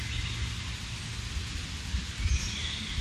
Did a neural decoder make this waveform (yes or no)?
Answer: no